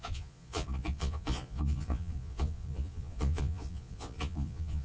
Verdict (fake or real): fake